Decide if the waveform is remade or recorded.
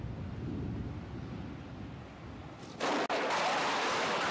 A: recorded